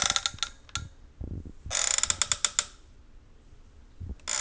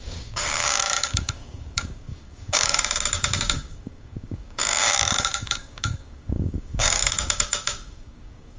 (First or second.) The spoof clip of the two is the second